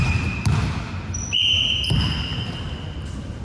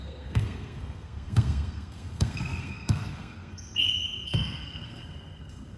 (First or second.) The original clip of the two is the first